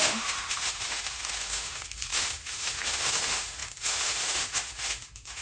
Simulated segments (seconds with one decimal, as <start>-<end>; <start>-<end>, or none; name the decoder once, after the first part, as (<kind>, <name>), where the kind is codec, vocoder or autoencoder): 0.0-5.4 (autoencoder, DAC-VAE)